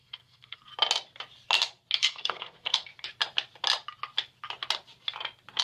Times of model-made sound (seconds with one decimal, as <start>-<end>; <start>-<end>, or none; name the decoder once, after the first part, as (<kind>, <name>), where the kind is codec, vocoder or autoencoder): 0.0-0.7 (codec, SNAC); 2.0-2.9

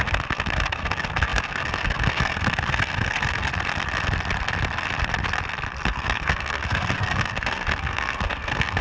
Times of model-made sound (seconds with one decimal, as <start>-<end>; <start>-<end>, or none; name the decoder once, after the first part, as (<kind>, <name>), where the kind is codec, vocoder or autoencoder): 0.0-3.5 (codec, SNAC); 5.8-8.8

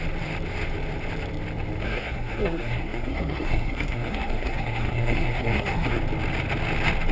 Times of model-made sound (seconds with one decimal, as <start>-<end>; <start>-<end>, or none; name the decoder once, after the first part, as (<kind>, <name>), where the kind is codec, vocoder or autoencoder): 1.8-6.0 (codec, SNAC)